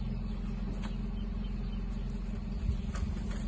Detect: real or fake real